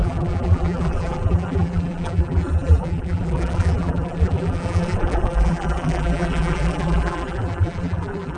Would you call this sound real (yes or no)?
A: no